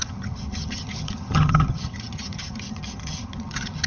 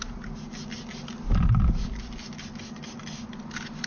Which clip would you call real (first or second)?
second